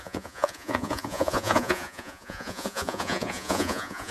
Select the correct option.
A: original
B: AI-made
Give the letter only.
B